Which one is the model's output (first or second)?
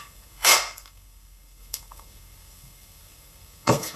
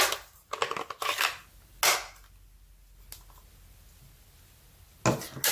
first